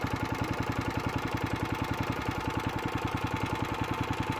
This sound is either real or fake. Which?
real